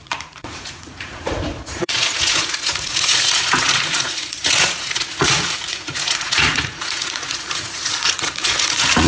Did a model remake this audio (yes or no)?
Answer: yes